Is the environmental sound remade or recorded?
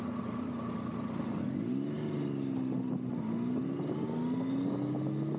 recorded